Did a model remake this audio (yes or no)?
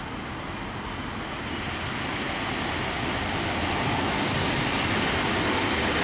no